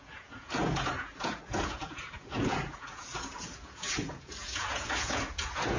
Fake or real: fake